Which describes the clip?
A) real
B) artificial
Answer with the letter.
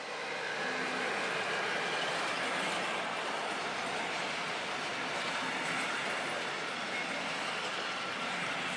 A